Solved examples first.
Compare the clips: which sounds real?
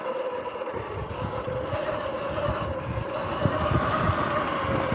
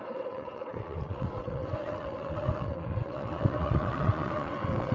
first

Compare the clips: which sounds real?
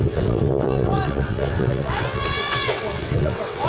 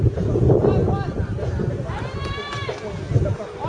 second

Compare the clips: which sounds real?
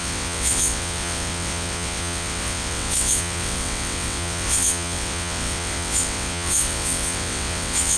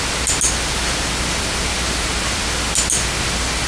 second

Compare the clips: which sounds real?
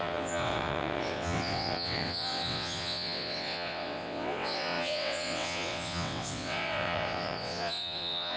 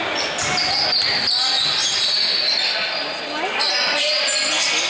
second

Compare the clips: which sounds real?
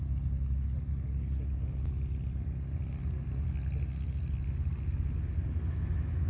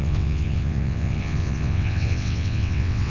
first